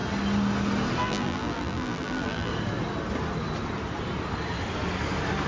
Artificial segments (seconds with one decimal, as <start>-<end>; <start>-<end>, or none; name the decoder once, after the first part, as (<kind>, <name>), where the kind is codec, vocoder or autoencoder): 1.0-2.5 (vocoder, BigVGAN v2)